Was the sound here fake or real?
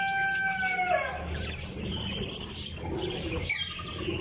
real